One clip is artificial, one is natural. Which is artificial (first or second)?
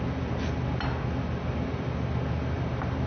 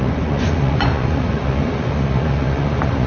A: second